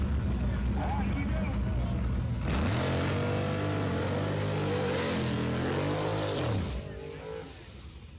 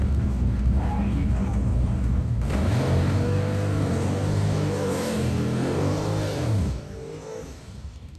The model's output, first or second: second